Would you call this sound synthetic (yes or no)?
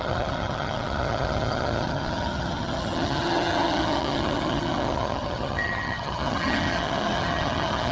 yes